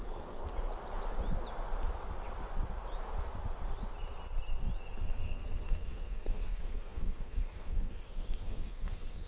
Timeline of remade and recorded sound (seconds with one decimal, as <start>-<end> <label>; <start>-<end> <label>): 0.0-0.5 remade; 0.5-5.0 recorded; 5.0-9.3 remade